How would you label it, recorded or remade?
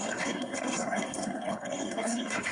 remade